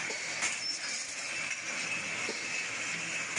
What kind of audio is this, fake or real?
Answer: real